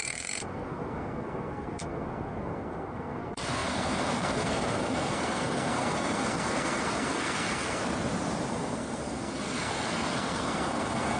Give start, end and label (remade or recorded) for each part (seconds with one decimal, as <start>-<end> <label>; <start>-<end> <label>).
0.0-7.8 remade; 7.8-8.5 recorded; 8.5-11.2 remade